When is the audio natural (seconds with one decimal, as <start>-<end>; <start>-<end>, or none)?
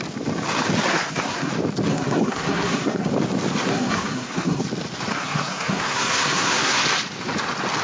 0.0-0.9; 1.5-1.9; 3.1-3.7; 4.6-5.1; 6.8-7.8